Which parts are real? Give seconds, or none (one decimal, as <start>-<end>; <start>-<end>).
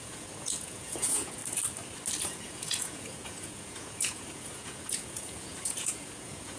1.4-2.2